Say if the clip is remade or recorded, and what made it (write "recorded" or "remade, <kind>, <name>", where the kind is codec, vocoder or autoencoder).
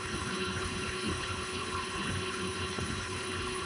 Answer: remade, codec, HILCodec